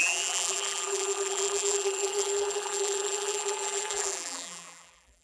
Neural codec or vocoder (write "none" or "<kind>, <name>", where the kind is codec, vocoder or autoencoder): vocoder, BigVGAN v2